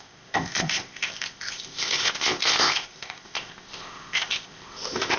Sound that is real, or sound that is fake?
fake